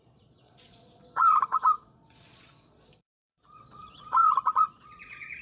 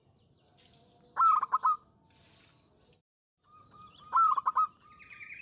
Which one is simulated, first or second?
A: first